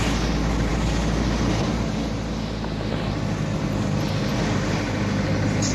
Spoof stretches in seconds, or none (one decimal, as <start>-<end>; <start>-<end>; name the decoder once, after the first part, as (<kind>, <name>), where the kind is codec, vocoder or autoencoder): none